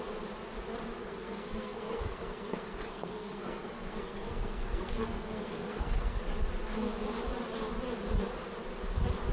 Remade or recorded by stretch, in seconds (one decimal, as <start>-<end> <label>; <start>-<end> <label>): 0.0-1.0 recorded; 1.0-6.2 remade; 6.2-9.3 recorded